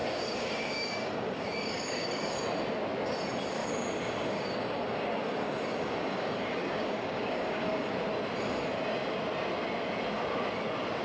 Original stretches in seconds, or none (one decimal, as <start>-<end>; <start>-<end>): 2.3-3.6; 7.9-11.0